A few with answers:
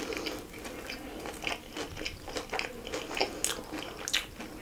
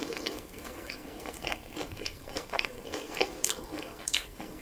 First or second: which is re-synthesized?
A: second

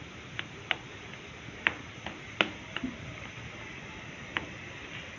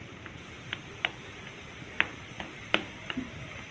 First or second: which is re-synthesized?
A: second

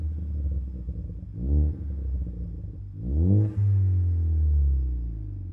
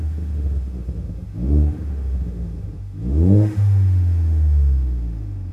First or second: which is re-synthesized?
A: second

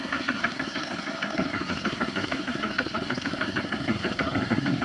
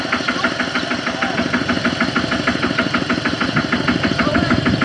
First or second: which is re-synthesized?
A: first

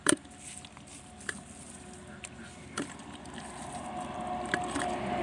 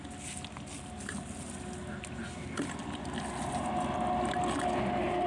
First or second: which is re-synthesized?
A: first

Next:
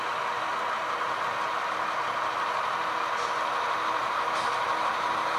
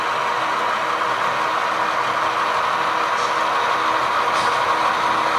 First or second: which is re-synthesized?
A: first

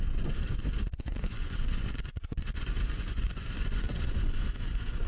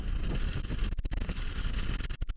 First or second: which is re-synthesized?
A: first